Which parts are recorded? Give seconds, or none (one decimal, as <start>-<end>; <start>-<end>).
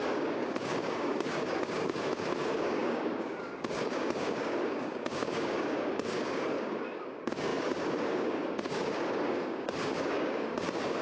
none